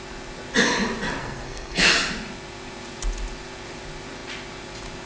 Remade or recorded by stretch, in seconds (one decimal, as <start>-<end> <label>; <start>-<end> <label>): 0.0-1.2 recorded; 1.2-1.9 remade; 1.9-5.1 recorded